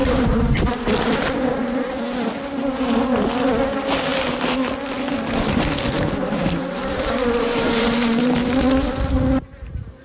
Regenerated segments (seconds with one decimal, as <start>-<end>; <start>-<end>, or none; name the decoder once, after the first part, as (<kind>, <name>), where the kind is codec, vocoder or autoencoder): 0.0-0.9 (vocoder, BigVGAN v2); 6.2-8.5